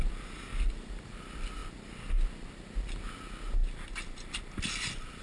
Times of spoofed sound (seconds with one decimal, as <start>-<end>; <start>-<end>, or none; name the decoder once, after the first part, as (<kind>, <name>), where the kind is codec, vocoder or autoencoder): none